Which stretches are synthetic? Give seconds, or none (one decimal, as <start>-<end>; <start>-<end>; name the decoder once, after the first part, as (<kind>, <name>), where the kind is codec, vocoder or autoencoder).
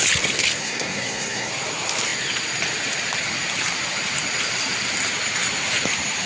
0.6-1.5 (codec, SNAC)